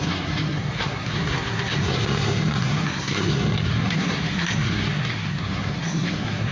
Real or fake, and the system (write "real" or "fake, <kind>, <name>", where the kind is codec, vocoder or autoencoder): fake, codec, SNAC